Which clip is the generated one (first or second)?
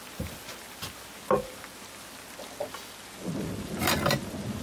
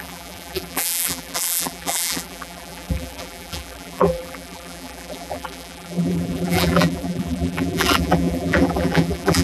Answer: second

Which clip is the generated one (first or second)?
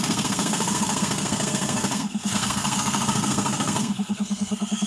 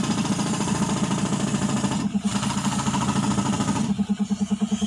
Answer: first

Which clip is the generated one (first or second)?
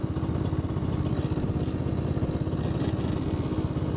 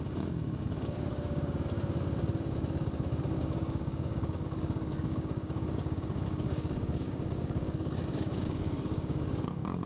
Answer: second